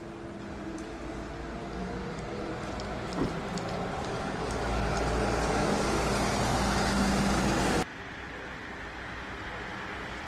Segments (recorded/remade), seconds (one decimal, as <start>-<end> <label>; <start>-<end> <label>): 0.0-1.6 recorded; 1.6-2.5 remade; 2.5-4.0 recorded; 4.0-6.1 remade; 6.1-10.3 recorded